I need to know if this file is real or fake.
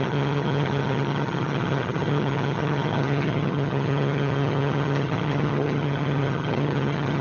fake